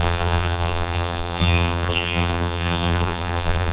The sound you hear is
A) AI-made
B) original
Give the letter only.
A